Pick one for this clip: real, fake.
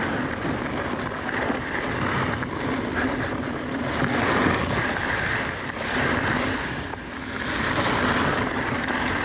real